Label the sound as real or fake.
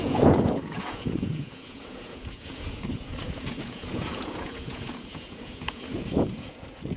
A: fake